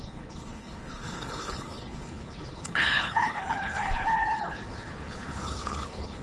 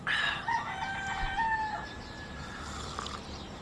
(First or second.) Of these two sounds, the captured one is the second